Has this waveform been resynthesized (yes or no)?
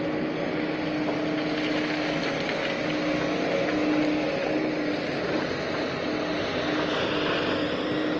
no